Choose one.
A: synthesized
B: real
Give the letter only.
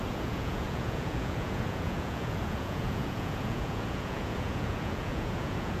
A